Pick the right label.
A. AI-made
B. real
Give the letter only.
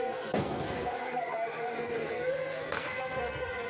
A